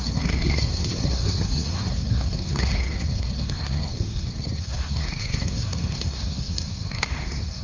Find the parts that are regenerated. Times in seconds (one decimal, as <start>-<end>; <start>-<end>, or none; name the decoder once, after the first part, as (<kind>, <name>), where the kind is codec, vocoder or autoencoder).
0.0-7.6 (codec, SNAC)